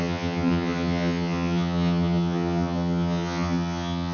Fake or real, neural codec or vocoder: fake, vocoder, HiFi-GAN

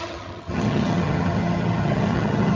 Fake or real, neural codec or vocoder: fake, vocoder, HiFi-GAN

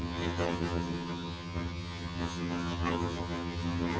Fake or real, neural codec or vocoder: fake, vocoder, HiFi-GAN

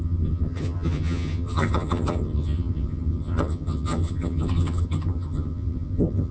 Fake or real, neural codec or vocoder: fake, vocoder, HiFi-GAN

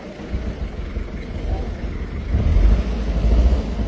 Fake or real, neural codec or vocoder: real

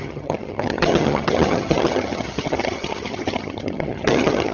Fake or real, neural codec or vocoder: fake, vocoder, HiFi-GAN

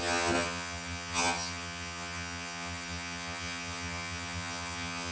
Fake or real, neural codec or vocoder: fake, vocoder, HiFi-GAN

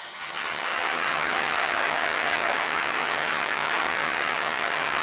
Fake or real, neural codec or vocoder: fake, vocoder, HiFi-GAN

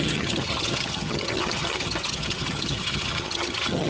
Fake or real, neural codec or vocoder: fake, vocoder, HiFi-GAN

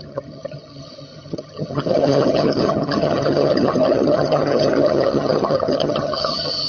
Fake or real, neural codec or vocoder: fake, vocoder, HiFi-GAN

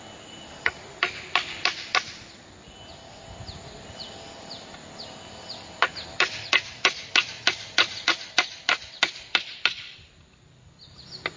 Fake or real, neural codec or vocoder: real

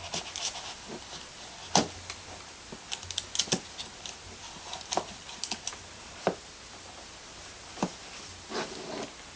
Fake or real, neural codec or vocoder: real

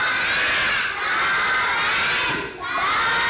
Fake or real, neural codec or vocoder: real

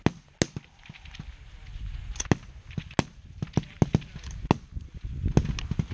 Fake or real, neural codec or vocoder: real